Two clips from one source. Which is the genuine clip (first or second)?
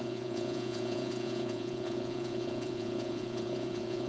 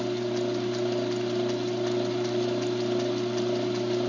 second